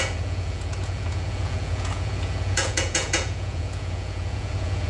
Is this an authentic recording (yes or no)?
no